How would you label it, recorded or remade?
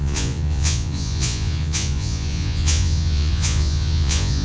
remade